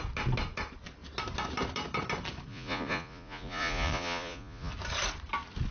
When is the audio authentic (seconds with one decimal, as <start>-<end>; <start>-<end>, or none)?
0.0-2.5; 4.7-5.7